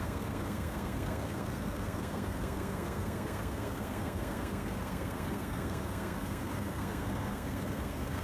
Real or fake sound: fake